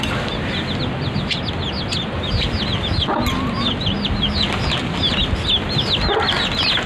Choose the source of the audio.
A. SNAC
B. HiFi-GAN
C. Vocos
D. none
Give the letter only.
D